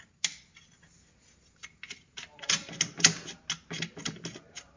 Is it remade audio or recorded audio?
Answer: recorded